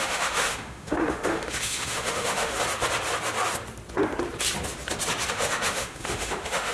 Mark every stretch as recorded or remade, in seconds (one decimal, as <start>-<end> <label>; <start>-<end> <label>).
0.0-2.5 remade; 2.5-5.3 recorded; 5.3-6.7 remade